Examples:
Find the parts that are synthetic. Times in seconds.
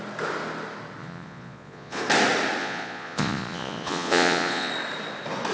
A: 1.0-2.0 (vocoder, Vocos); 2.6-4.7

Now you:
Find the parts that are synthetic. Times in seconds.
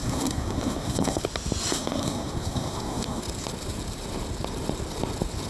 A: 0.0-1.2 (codec, SNAC); 1.7-3.2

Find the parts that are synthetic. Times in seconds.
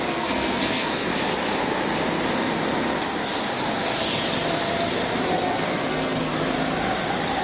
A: 0.0-1.1 (codec, SNAC); 5.3-6.3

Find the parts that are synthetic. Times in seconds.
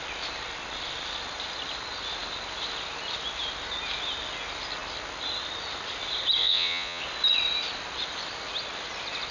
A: 6.4-7.0 (vocoder, Vocos)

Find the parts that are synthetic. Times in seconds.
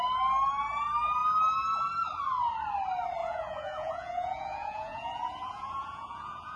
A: 3.2-6.6 (vocoder, Vocos)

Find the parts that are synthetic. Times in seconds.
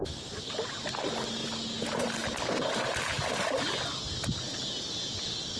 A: none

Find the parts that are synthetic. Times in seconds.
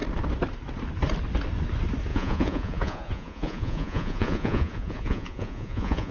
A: 2.1-6.1 (vocoder, Vocos)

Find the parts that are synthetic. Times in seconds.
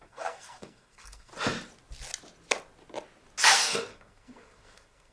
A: 0.0-1.3 (codec, SNAC); 3.4-5.1